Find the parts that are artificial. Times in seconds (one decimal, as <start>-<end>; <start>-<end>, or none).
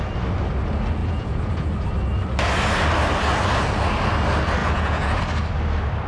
1.0-1.7; 4.6-5.2